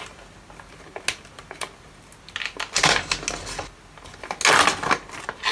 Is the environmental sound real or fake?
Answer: real